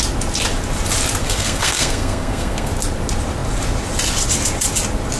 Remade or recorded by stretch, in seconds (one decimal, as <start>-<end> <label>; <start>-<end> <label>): 0.0-1.2 recorded; 1.2-2.7 remade; 2.7-5.2 recorded

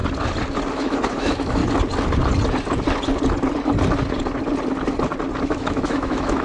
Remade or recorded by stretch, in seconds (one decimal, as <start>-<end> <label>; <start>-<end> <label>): 0.0-0.7 recorded; 0.7-1.6 remade; 1.6-5.4 recorded; 5.4-6.4 remade

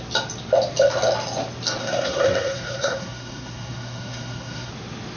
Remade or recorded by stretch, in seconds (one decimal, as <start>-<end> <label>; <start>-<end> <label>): 0.0-1.8 recorded; 1.8-4.7 remade; 4.7-5.2 recorded

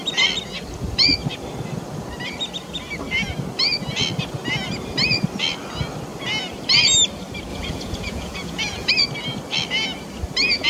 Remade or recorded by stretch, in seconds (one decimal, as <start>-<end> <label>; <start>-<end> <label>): 0.0-7.5 recorded; 7.5-8.9 remade; 8.9-10.7 recorded

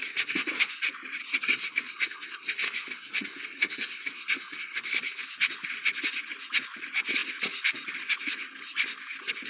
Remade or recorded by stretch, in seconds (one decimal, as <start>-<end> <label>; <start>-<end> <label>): 0.0-0.7 remade; 0.7-1.3 recorded; 1.3-5.2 remade; 5.2-9.5 recorded

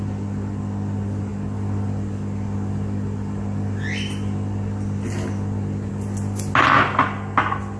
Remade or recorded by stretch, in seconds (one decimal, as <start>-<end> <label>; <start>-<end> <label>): 0.0-7.8 recorded